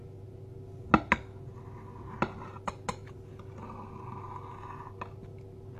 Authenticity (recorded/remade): recorded